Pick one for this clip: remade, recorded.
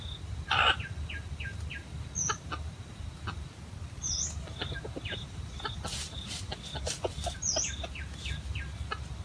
recorded